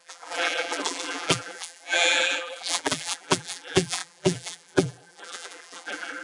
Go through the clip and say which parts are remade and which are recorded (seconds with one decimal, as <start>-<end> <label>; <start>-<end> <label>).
0.0-6.2 remade